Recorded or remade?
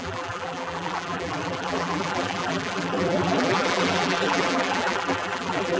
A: remade